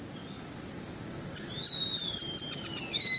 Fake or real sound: real